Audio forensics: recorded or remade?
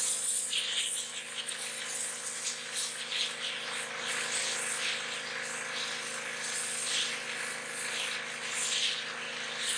recorded